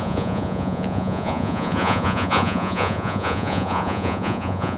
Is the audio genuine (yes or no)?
no